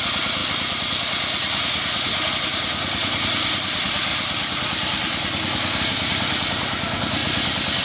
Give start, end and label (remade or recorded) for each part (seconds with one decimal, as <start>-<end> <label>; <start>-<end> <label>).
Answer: 0.0-7.8 recorded